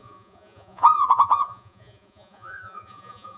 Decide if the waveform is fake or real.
fake